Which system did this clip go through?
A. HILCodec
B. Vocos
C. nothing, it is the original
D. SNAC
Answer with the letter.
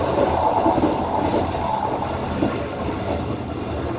C